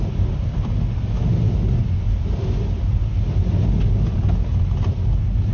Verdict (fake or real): real